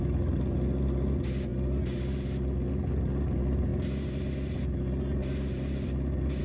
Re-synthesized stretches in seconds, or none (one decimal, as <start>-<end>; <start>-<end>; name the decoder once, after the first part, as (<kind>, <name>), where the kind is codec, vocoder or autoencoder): none